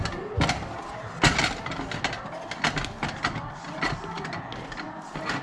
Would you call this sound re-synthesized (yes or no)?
no